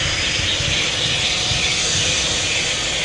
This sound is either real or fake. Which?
real